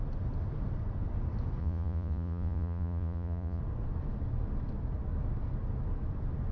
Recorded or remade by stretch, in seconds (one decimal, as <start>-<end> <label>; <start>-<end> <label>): 0.0-1.6 recorded; 1.6-3.6 remade; 3.6-6.5 recorded